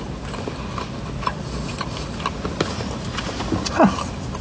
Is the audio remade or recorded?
recorded